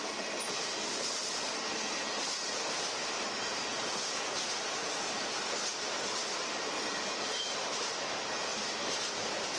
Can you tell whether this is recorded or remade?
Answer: remade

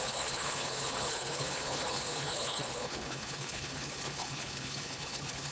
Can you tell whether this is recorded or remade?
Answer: remade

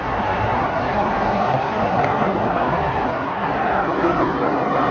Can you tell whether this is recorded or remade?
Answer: remade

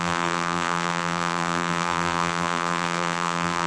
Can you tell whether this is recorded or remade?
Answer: remade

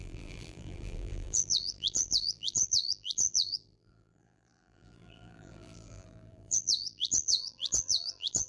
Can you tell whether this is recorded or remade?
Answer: remade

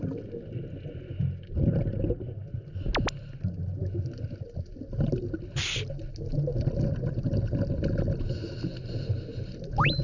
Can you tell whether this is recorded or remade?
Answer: recorded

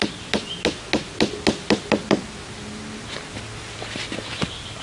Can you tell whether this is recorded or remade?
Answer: recorded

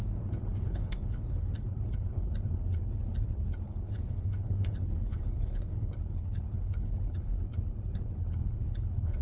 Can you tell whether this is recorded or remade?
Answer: remade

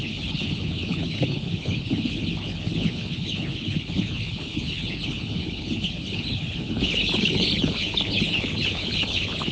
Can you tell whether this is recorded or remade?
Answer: remade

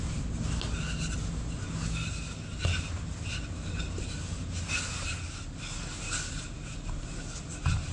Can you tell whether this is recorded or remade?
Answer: recorded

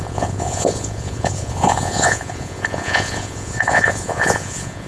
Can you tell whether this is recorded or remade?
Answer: remade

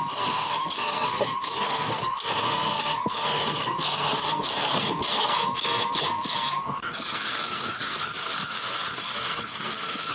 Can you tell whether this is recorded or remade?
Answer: remade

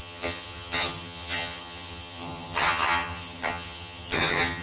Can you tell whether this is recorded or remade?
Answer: remade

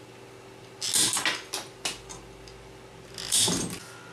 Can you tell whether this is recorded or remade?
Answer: recorded